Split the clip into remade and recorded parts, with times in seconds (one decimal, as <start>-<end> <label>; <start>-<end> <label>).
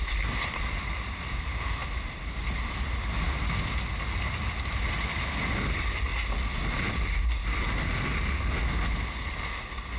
0.0-10.0 recorded